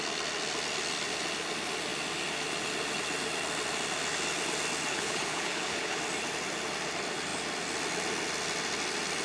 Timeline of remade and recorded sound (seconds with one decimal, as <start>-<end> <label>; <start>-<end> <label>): 0.0-4.9 recorded; 4.9-6.0 remade; 6.0-9.2 recorded